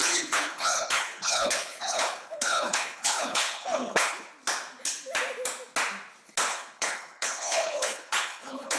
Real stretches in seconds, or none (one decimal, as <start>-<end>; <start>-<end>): 4.3-6.5